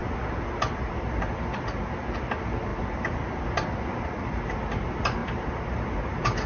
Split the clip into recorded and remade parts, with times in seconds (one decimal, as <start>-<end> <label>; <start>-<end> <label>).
0.0-6.5 recorded